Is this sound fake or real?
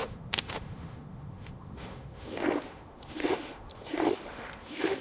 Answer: fake